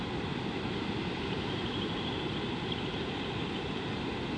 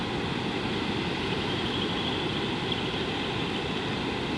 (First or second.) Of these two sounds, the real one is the second